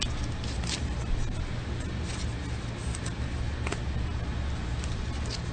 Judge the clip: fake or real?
real